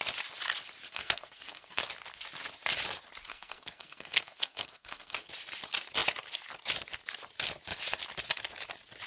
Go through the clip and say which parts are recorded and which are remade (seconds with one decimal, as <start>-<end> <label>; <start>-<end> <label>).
0.0-0.9 recorded; 0.9-1.9 remade; 1.9-3.3 recorded; 3.3-5.3 remade; 5.3-9.1 recorded

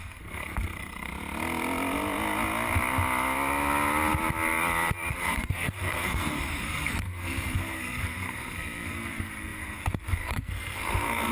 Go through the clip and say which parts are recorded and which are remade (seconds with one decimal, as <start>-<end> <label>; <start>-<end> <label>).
0.0-1.1 remade; 1.1-5.1 recorded; 5.1-11.3 remade